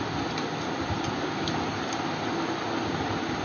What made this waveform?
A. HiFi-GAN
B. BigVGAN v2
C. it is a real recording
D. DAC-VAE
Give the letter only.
C